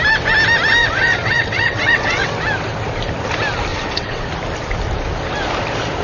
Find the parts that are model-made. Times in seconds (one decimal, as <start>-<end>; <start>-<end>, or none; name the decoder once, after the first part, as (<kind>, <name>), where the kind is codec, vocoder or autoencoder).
0.8-2.3 (vocoder, WaveNeXt); 3.7-4.3